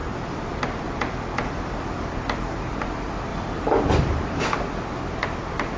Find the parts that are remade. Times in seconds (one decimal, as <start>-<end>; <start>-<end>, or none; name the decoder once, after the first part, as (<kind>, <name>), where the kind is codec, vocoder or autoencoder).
3.3-4.4 (vocoder, BigVGAN v2)

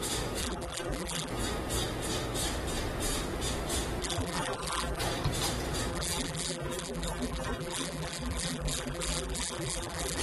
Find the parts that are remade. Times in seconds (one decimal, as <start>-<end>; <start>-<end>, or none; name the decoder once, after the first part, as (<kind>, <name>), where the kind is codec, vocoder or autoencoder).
0.4-1.3 (vocoder, BigVGAN v2); 4.0-5.0; 5.9-10.2

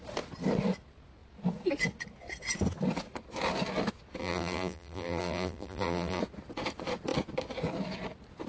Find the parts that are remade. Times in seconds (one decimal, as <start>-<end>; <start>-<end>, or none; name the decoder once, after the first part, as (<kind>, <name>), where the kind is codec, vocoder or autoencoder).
4.2-6.2 (vocoder, BigVGAN v2)